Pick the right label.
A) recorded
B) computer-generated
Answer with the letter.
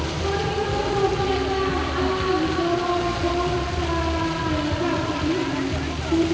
A